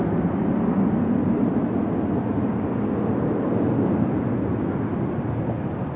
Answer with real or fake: real